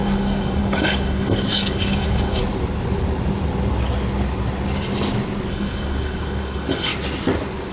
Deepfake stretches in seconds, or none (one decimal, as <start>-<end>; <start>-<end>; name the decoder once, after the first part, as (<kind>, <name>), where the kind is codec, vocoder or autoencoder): 0.0-2.4 (codec, DAC); 5.5-6.9